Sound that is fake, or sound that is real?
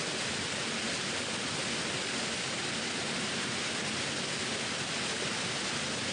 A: real